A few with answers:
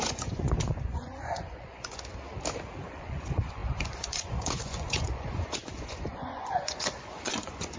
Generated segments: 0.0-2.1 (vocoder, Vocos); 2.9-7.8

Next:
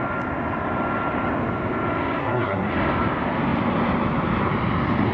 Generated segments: 2.2-2.7 (codec, SNAC)

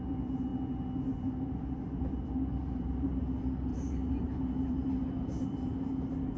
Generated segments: 2.6-3.1 (vocoder, BigVGAN v2); 3.7-5.9